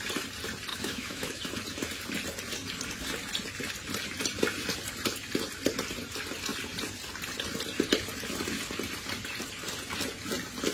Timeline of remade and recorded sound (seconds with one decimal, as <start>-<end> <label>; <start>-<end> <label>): 0.0-0.7 recorded; 0.7-1.4 remade; 1.4-10.7 recorded